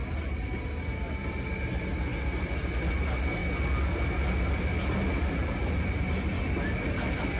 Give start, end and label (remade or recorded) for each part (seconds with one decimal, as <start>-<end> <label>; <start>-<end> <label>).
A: 0.0-7.4 recorded